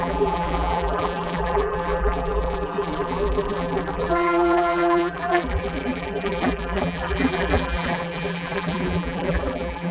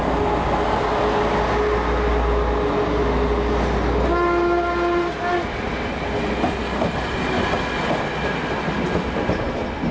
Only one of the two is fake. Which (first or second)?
first